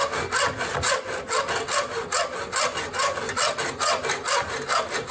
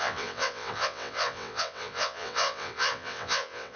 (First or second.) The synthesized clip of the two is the second